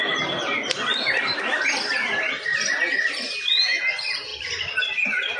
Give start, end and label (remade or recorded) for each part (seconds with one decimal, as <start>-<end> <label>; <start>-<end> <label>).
0.0-5.4 recorded